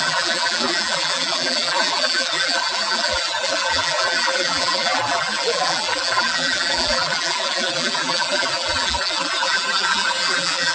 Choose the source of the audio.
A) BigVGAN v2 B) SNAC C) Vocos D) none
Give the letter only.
A